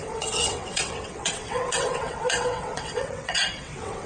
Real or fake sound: fake